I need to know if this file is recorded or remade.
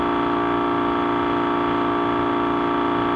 recorded